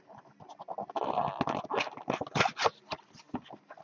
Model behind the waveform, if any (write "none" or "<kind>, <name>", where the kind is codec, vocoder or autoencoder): none